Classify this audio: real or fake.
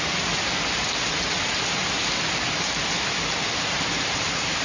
real